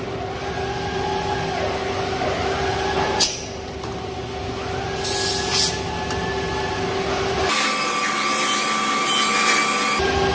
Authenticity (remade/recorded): recorded